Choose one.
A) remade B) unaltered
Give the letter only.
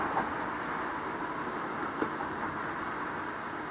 B